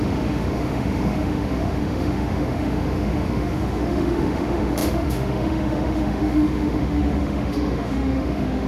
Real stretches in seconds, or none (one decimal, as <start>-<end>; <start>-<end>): none